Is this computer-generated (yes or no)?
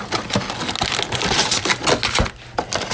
no